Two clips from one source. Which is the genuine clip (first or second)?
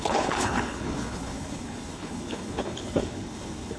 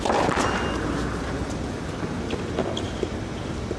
second